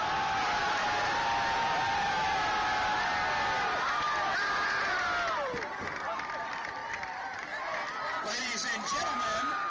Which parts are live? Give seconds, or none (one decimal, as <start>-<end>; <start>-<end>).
none